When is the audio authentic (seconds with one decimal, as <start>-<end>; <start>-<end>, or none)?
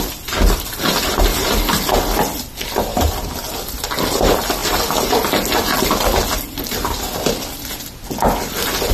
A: 0.0-8.9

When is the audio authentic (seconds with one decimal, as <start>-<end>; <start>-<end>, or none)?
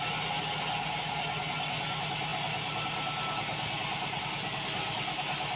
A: 0.0-5.6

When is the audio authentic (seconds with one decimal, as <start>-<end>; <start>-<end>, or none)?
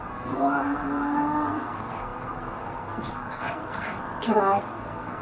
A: none